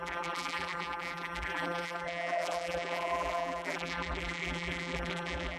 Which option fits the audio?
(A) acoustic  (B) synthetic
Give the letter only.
B